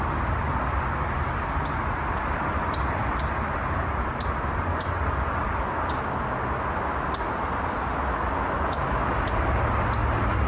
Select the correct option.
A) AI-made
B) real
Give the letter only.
B